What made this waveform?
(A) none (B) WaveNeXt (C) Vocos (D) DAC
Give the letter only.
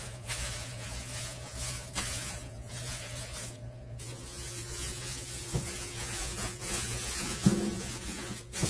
C